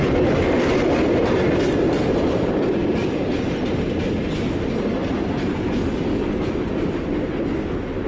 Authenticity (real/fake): real